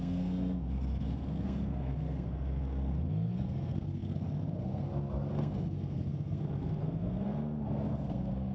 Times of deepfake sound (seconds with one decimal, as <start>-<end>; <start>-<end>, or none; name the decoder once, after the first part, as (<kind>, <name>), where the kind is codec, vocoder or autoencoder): 0.0-8.5 (codec, SNAC)